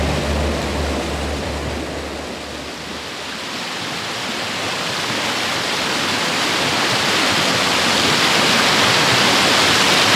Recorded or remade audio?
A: recorded